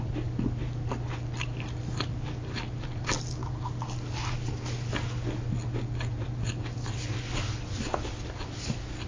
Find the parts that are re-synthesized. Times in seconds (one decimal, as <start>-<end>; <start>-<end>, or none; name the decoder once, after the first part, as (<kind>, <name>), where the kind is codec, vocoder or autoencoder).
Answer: none

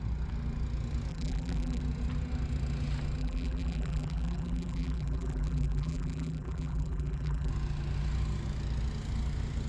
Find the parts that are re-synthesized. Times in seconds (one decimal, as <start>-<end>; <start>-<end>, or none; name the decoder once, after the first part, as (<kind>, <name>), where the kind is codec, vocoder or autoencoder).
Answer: 1.1-1.8 (vocoder, BigVGAN v2); 3.2-7.5

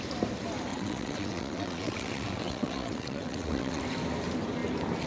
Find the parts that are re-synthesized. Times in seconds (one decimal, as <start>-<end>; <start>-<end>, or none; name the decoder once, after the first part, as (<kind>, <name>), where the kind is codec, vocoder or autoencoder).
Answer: 0.7-3.8 (vocoder, WaveNeXt)

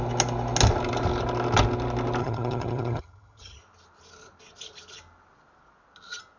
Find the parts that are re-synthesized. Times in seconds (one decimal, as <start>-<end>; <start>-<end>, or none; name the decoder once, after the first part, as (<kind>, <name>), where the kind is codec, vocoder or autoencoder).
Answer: 2.2-3.6 (vocoder, HiFi-GAN)

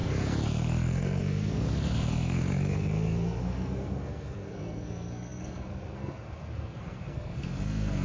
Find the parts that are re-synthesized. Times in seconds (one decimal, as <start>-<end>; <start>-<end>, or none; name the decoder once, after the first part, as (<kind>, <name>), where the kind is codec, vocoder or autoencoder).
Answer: 0.0-8.0 (codec, SNAC)

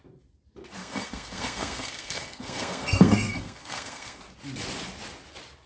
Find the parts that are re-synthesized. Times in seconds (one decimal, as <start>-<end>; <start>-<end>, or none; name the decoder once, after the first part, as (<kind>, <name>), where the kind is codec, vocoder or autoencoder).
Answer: 0.8-4.2 (codec, SNAC)

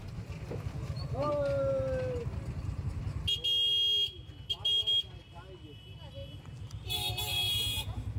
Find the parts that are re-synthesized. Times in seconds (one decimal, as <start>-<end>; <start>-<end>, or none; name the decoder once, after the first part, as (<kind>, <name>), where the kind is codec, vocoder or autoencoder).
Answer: none

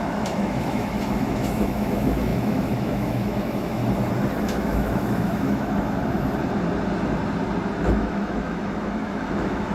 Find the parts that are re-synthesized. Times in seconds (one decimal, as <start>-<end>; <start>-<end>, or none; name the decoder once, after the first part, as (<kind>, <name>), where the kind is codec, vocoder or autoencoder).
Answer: 0.0-3.8 (autoencoder, DAC-VAE); 4.4-6.0; 7.8-9.7